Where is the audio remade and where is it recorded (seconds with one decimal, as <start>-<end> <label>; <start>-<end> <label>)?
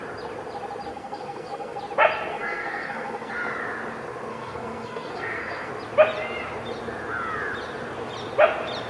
0.0-0.9 recorded; 0.9-1.8 remade; 1.8-2.3 recorded; 2.3-3.3 remade; 3.3-4.3 recorded; 4.3-5.7 remade; 5.7-8.9 recorded